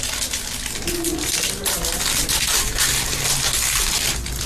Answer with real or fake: real